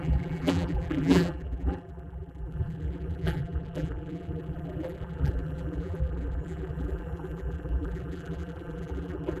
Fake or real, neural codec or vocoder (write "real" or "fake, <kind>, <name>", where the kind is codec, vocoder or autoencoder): fake, vocoder, BigVGAN v2